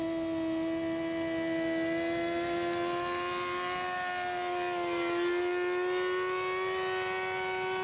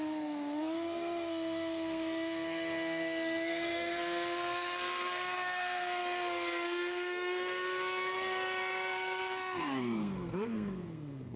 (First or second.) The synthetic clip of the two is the second